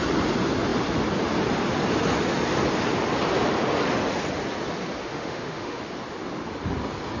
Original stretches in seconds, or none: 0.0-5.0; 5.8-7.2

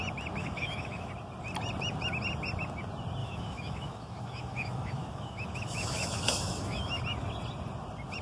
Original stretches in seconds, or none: 0.0-0.4; 1.1-3.2; 7.0-8.2

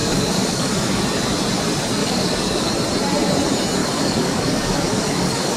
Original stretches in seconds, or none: 1.0-2.0; 2.7-3.8

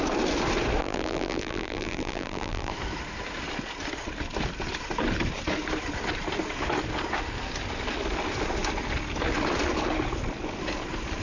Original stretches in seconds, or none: 0.0-0.8; 2.7-11.2

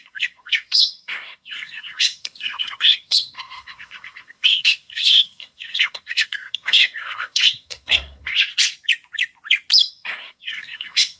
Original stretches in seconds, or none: 8.5-9.9

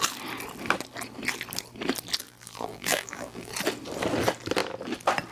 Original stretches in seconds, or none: 0.0-2.2; 3.5-5.3

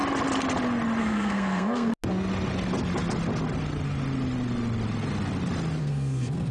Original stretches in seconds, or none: 0.0-1.0; 1.9-5.8

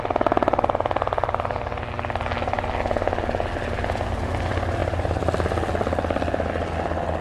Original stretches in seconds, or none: 0.0-7.2